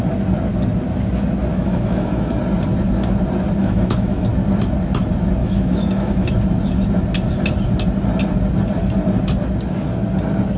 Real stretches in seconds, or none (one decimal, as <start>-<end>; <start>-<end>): 0.0-1.5; 2.4-3.6; 4.3-5.4; 6.3-10.6

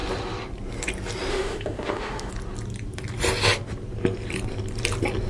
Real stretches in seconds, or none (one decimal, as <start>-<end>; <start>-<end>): 0.0-1.3; 2.3-5.3

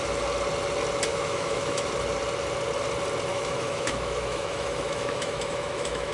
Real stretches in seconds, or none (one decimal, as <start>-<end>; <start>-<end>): 0.0-1.1; 1.9-3.3